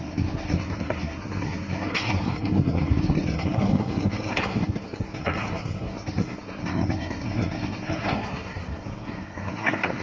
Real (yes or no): no